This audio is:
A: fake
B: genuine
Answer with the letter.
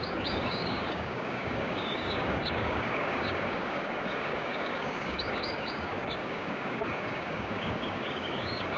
A